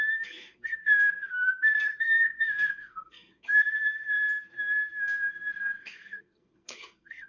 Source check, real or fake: fake